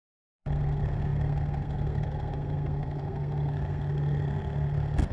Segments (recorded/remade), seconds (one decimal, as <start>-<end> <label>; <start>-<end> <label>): 0.0-5.1 remade